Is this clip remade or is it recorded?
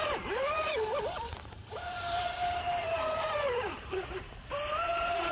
remade